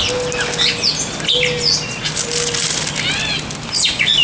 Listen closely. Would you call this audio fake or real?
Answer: real